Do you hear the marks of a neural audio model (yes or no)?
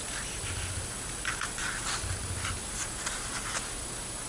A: no